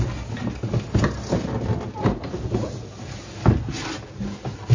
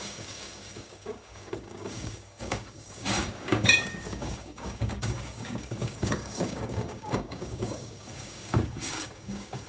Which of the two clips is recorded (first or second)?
first